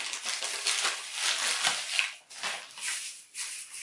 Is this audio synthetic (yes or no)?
no